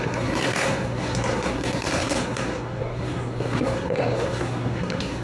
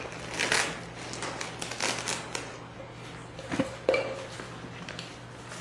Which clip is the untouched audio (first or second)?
second